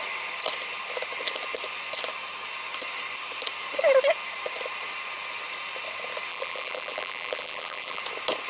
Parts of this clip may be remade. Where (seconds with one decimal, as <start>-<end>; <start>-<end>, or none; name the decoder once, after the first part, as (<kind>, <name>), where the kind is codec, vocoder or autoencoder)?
6.3-8.0 (vocoder, BigVGAN v2)

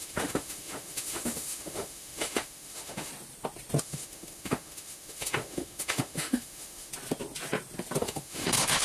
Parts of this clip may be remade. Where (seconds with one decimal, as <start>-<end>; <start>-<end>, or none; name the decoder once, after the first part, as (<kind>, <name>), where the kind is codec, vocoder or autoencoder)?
0.0-3.1 (autoencoder, DAC-VAE); 3.8-6.9; 8.0-8.8

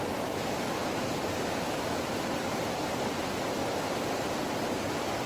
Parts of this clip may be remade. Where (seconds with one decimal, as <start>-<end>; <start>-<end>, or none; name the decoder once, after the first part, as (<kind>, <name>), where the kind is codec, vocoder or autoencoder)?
none

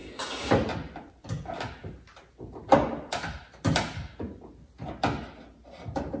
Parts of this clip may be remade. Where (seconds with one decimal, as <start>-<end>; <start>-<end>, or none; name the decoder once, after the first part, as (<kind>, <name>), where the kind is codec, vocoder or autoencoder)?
0.0-0.5 (codec, DAC)

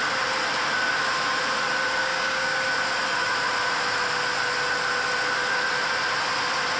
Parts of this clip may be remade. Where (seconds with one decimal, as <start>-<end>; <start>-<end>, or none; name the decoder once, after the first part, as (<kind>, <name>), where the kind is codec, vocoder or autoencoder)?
2.0-2.6 (codec, DAC)